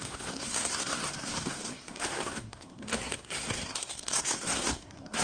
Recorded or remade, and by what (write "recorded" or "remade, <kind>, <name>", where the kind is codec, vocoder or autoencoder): remade, codec, SNAC